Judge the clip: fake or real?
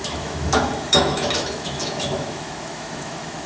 fake